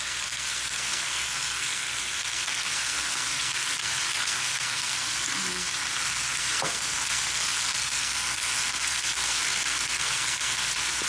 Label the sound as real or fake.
fake